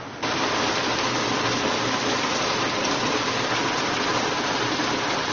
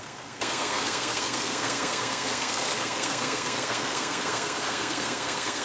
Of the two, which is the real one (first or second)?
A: first